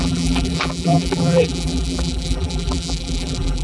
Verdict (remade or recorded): remade